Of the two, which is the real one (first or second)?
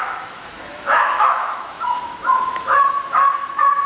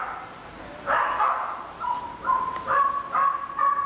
second